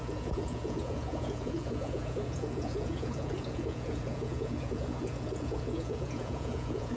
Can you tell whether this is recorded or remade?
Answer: remade